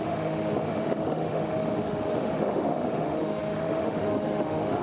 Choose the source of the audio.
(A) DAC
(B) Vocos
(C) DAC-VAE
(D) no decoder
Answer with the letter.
C